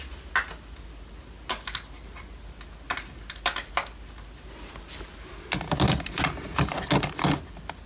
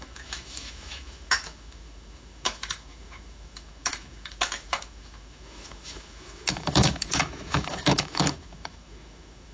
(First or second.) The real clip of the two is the first